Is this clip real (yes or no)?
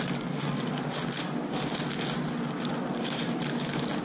yes